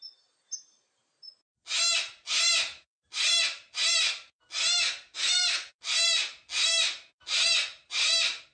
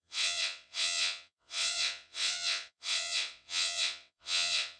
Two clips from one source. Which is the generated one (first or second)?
second